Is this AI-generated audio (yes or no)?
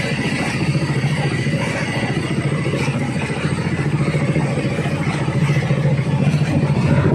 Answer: yes